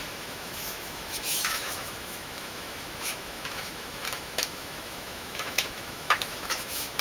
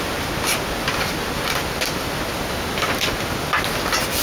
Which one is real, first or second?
second